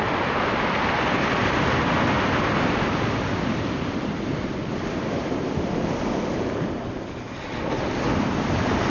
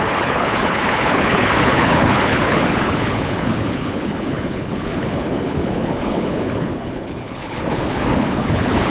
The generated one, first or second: second